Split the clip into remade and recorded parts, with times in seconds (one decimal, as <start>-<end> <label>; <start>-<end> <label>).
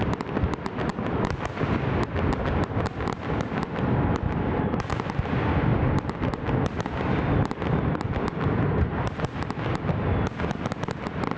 0.0-11.4 recorded